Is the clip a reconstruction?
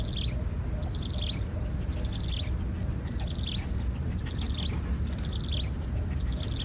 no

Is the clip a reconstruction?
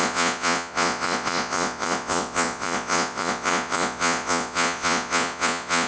yes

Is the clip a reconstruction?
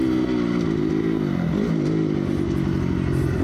no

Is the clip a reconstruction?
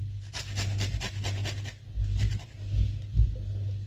no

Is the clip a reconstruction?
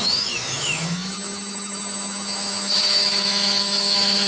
yes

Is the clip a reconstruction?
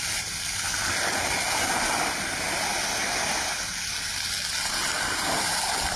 no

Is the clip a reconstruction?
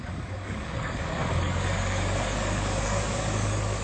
yes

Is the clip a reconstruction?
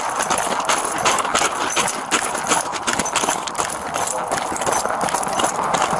no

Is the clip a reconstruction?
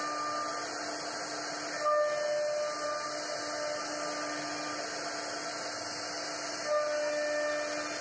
no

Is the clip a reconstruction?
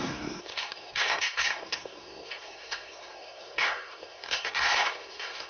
yes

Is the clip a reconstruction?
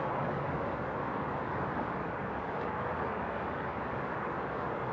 yes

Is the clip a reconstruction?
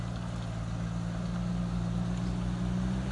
no